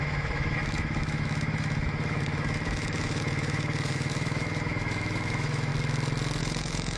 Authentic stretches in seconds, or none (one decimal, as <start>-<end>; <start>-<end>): 5.7-6.4